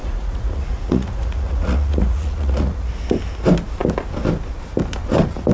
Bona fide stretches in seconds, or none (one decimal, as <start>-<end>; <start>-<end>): 2.9-5.5